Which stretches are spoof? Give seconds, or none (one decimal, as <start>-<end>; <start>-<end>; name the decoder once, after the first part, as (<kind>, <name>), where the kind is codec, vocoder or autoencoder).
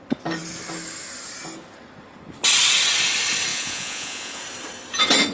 3.5-4.4 (vocoder, Vocos)